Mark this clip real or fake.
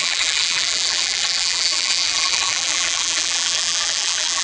fake